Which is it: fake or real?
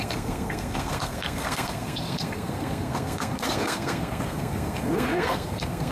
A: fake